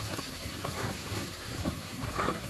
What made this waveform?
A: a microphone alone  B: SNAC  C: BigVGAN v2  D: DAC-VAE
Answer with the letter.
B